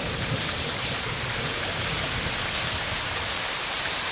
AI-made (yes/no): yes